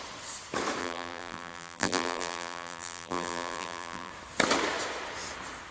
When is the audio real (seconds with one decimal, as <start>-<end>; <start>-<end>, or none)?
0.0-0.8; 4.1-5.7